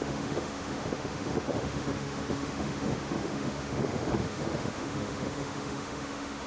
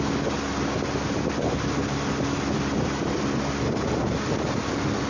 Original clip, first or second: second